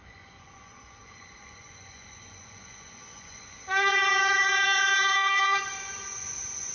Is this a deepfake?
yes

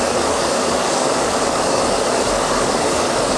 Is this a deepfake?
yes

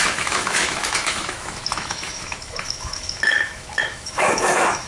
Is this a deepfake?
yes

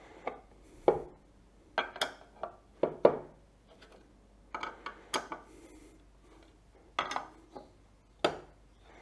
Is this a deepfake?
no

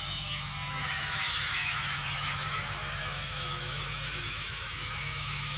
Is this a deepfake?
yes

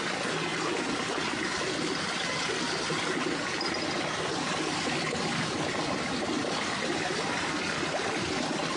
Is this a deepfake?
no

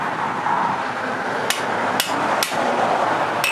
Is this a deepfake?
no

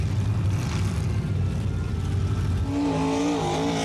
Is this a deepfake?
no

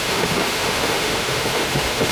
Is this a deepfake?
yes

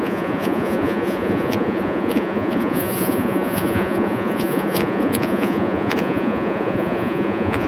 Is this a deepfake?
yes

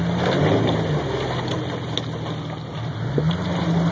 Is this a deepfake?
no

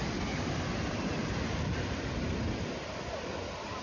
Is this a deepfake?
no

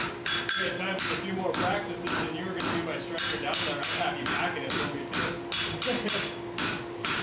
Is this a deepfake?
no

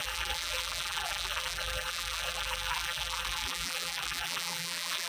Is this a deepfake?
yes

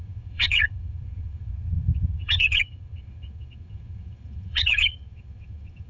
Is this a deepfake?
yes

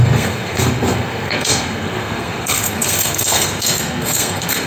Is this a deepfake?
yes